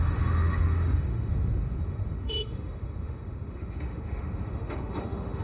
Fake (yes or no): yes